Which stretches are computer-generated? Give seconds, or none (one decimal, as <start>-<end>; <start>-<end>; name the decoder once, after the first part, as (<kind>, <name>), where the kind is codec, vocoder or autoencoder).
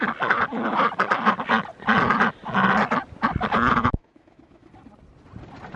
3.9-4.7 (autoencoder, DAC-VAE)